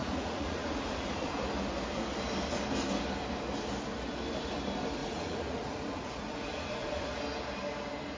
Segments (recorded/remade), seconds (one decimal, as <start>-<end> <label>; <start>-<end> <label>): 0.0-1.3 remade; 1.3-5.0 recorded; 5.0-7.2 remade; 7.2-8.2 recorded